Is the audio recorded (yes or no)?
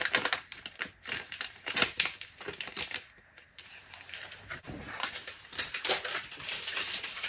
no